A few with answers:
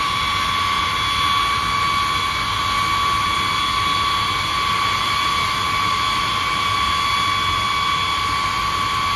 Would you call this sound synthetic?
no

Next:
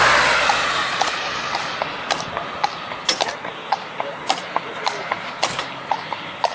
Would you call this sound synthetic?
no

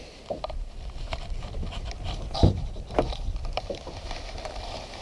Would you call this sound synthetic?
yes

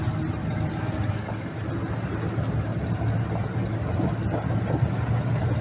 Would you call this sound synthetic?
no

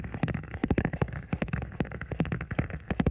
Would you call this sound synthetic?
yes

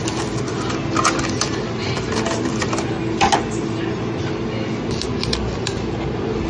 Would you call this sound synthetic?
no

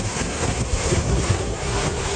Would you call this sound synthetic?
yes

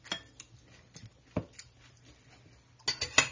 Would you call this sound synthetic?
no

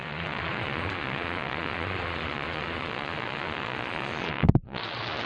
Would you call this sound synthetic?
yes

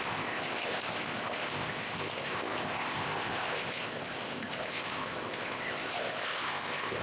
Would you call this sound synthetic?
yes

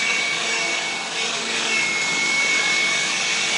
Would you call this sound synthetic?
yes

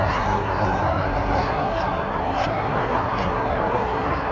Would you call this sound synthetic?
yes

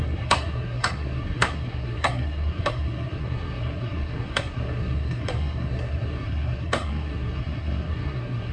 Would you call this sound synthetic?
yes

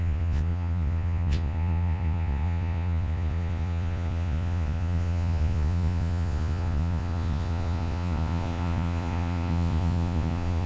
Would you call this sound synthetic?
yes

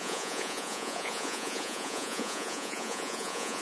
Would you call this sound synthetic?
yes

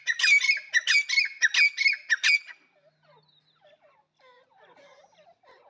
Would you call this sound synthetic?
no